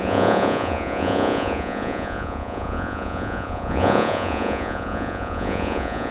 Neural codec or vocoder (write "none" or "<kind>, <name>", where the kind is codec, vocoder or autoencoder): vocoder, Vocos